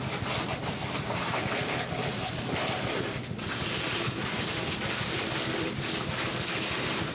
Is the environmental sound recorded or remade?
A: recorded